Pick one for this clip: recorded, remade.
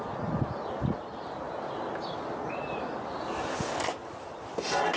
recorded